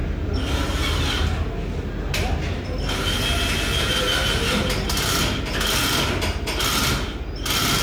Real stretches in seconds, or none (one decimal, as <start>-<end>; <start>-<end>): 0.0-7.8